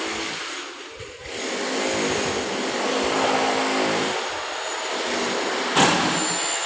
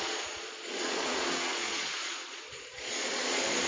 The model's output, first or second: second